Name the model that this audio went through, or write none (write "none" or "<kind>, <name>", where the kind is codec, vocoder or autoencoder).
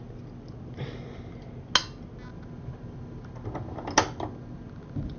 none